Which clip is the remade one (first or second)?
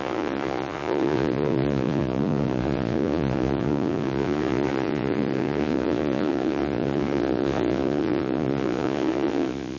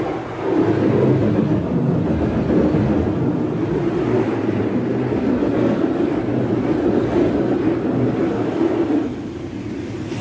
first